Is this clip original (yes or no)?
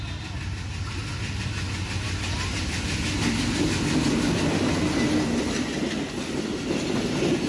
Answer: yes